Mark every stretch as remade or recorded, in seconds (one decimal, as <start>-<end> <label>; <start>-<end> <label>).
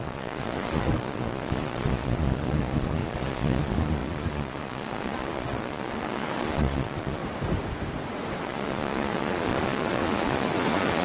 0.0-7.2 remade; 7.2-8.4 recorded; 8.4-11.0 remade